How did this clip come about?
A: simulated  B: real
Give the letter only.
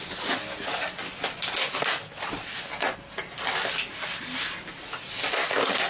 B